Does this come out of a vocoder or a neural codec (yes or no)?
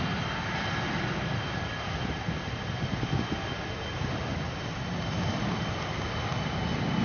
no